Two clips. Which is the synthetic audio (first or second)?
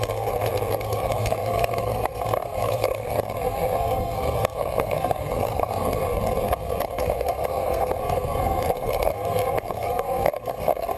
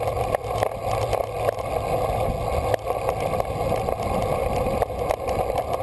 first